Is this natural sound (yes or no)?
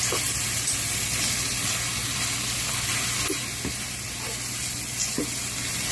yes